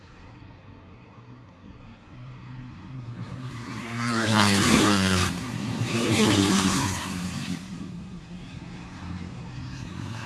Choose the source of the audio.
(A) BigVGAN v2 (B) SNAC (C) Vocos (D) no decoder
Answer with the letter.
B